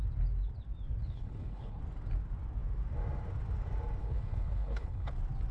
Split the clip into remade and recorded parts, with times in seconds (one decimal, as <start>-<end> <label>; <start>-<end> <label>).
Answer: 0.0-1.0 recorded; 1.0-1.8 remade; 1.8-4.0 recorded; 4.0-5.1 remade; 5.1-5.5 recorded